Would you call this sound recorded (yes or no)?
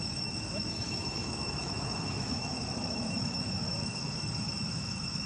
no